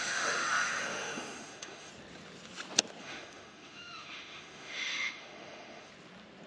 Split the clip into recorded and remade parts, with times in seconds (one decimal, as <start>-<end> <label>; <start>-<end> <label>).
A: 0.0-1.9 remade; 1.9-3.0 recorded; 3.0-5.9 remade; 5.9-6.5 recorded